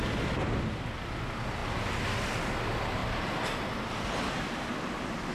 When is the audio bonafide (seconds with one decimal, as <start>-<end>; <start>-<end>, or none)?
0.0-3.0; 3.9-5.3